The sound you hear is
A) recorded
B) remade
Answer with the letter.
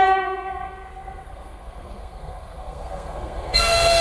B